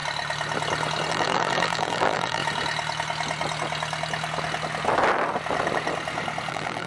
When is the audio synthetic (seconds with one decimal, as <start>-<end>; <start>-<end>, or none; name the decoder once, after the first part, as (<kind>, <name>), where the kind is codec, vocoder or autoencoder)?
1.1-2.4 (vocoder, BigVGAN v2); 6.5-6.9